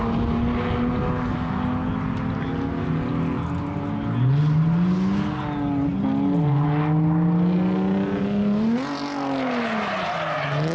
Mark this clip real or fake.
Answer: real